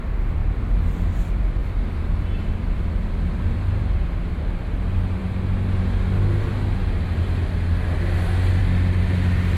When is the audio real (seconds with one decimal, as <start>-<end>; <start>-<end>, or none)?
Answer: 0.0-9.6